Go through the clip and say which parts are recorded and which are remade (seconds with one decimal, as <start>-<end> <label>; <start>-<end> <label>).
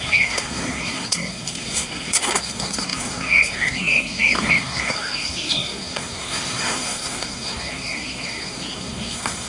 0.0-9.5 remade